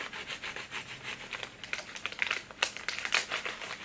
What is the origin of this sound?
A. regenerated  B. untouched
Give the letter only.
B